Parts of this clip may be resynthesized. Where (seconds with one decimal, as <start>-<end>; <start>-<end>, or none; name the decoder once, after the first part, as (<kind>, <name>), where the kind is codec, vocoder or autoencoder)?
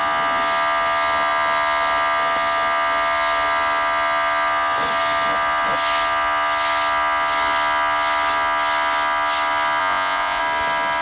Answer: 9.8-10.4 (vocoder, Vocos)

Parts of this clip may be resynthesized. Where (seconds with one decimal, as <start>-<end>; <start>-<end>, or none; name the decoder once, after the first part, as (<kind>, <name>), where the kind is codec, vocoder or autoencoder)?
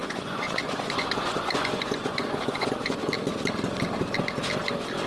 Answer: 0.0-3.1 (vocoder, Vocos)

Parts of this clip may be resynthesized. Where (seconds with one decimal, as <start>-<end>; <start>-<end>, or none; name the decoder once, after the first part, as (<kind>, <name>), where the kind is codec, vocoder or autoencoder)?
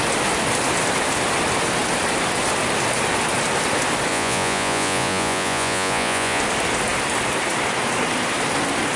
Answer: 4.1-6.4 (vocoder, Vocos)